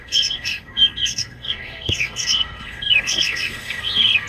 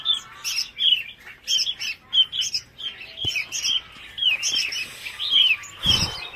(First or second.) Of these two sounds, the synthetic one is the first